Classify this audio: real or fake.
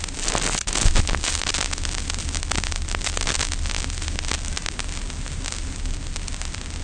real